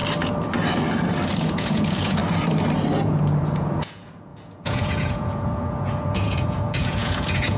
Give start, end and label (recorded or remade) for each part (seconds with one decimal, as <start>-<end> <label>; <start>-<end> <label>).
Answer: 0.0-1.4 recorded; 1.4-2.2 remade; 2.2-3.0 recorded; 3.0-7.6 remade